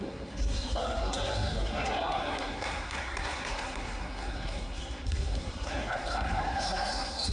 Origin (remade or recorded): remade